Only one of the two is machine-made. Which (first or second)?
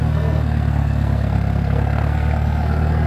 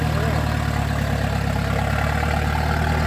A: first